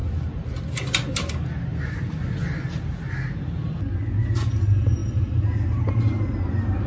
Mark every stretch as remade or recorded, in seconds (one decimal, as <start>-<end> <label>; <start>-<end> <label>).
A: 0.0-6.9 recorded